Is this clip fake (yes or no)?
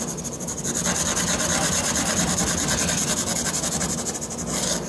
no